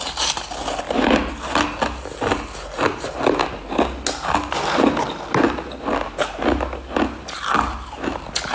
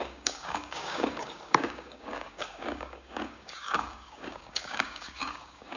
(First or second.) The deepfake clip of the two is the second